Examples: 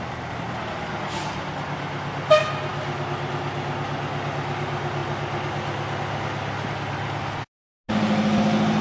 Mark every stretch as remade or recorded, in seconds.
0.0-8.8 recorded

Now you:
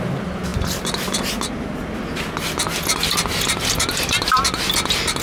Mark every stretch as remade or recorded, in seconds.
0.0-5.2 recorded

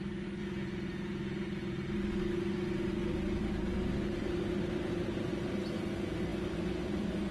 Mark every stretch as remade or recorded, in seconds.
0.0-7.3 recorded

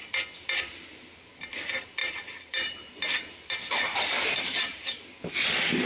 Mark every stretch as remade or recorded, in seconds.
0.0-2.0 recorded; 2.0-5.3 remade; 5.3-5.9 recorded